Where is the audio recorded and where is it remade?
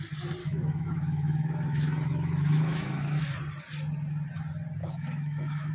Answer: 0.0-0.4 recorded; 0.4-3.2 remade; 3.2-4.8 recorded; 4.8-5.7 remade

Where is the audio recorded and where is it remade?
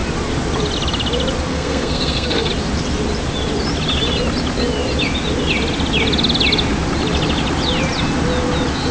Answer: 0.0-1.5 recorded; 1.5-2.5 remade; 2.5-8.9 recorded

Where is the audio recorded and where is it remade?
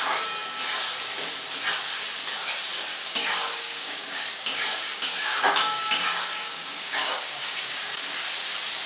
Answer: 0.0-2.9 recorded; 2.9-8.0 remade; 8.0-8.9 recorded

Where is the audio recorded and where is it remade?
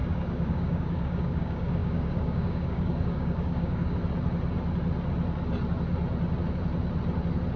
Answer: 0.0-4.0 remade; 4.0-7.6 recorded